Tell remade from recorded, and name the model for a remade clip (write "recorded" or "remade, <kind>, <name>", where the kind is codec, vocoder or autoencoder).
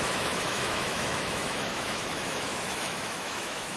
remade, autoencoder, DAC-VAE